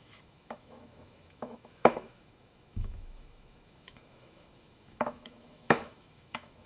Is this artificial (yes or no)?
yes